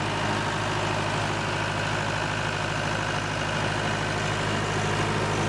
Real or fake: real